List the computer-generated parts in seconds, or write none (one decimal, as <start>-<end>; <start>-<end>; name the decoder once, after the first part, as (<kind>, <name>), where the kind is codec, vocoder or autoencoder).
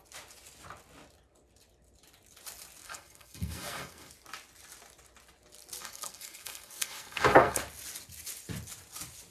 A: 2.8-4.1 (codec, SNAC); 5.8-7.6